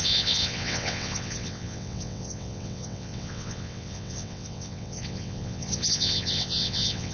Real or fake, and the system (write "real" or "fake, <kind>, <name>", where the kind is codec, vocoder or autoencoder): fake, vocoder, WaveNeXt